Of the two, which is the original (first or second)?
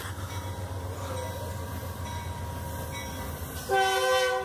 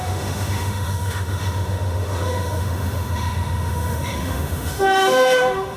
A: first